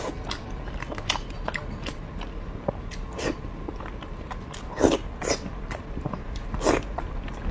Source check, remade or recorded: recorded